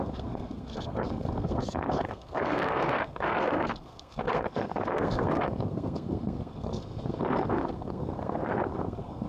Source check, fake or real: fake